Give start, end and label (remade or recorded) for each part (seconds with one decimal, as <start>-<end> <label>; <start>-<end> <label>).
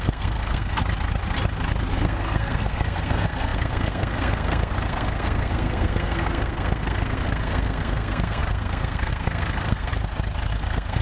0.0-0.8 remade; 0.8-1.9 recorded; 1.9-9.9 remade; 9.9-10.5 recorded; 10.5-11.0 remade